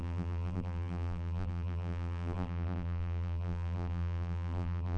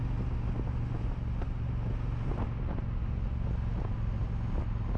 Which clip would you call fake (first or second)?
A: first